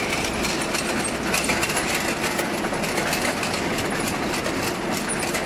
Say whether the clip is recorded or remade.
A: recorded